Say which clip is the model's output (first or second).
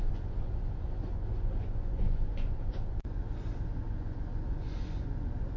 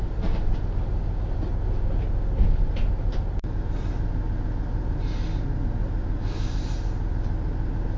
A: first